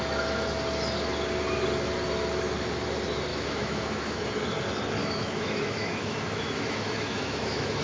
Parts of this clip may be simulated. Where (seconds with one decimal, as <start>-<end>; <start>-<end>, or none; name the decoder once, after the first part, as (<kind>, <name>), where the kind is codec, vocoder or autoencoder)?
3.3-4.2 (autoencoder, DAC-VAE); 5.0-7.8